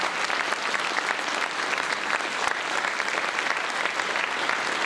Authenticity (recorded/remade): recorded